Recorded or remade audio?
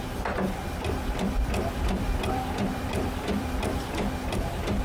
remade